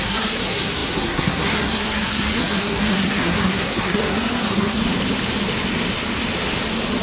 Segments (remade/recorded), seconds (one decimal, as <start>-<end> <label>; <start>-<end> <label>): 0.0-4.8 remade; 4.8-7.0 recorded

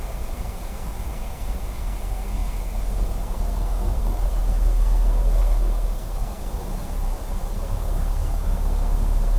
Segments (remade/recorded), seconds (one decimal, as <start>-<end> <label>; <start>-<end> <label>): 0.0-9.4 remade

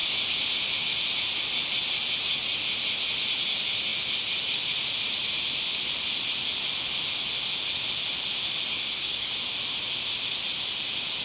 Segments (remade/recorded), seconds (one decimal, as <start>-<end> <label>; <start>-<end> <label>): 0.0-8.7 recorded; 8.7-9.3 remade; 9.3-11.2 recorded